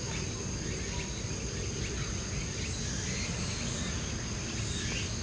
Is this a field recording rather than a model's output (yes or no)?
yes